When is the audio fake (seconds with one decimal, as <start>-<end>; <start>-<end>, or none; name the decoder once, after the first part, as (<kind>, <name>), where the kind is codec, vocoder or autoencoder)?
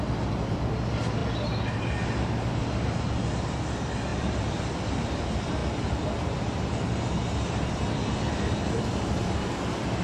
4.1-5.0 (vocoder, BigVGAN v2); 5.6-6.9